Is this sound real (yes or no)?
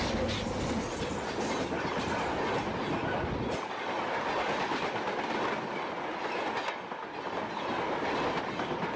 yes